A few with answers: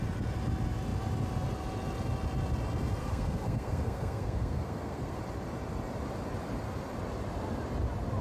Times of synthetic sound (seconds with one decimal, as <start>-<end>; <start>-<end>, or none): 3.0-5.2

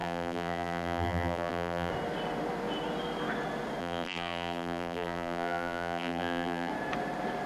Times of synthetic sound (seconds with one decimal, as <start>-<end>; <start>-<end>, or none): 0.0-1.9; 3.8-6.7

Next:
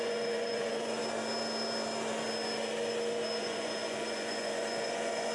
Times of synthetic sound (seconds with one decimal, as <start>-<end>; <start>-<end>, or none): 0.0-1.0; 3.4-5.3

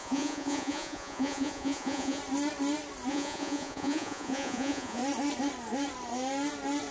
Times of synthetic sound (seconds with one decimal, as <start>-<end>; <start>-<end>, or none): 0.0-2.2; 3.1-5.0

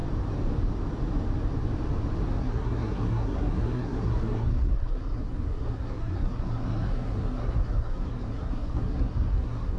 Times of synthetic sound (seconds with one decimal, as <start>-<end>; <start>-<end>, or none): 2.4-9.8